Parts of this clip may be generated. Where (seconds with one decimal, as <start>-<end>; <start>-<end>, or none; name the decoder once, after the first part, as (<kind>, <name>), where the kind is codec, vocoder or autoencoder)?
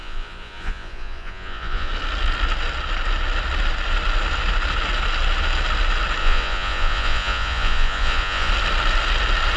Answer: 0.0-1.9 (vocoder, Vocos); 6.2-8.5